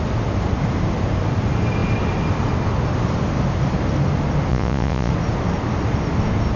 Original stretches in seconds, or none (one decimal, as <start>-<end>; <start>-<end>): 0.0-4.5; 5.1-6.6